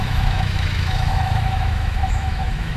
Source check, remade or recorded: remade